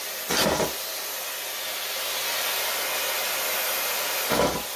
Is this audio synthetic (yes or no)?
no